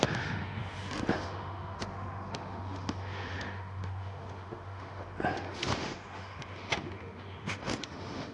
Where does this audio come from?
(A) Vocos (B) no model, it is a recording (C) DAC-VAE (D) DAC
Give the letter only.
C